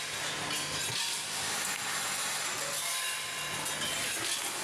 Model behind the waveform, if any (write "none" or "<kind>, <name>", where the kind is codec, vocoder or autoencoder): none